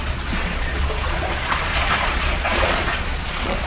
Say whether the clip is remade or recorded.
remade